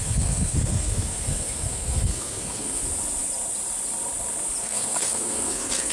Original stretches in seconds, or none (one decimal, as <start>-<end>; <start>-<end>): 2.8-4.6

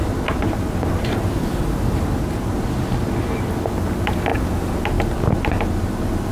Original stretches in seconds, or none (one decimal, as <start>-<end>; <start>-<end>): 0.0-6.3

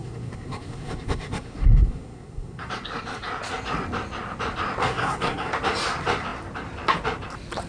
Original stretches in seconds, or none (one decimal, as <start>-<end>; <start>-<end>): 2.7-4.8; 5.5-7.7

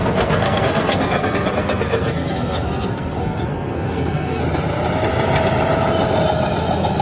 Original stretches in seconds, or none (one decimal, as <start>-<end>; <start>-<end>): 4.4-7.0

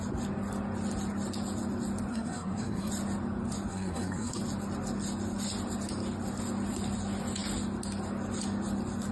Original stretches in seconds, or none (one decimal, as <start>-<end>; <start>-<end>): 0.0-2.1; 2.9-3.7; 4.4-9.1